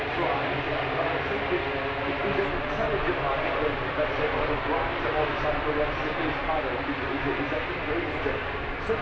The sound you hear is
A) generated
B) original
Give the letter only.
B